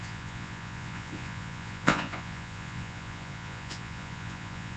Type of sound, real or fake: fake